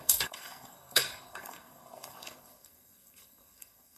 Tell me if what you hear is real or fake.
fake